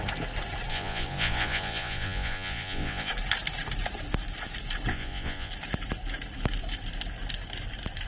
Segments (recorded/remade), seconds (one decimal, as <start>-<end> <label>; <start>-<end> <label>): 0.0-0.7 recorded; 0.7-3.1 remade; 3.1-4.9 recorded; 4.9-5.5 remade; 5.5-8.1 recorded